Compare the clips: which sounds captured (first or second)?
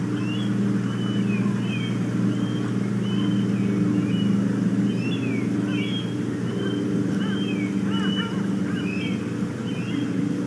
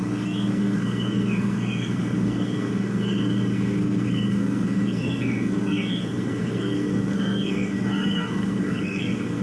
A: first